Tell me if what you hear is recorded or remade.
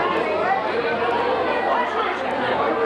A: recorded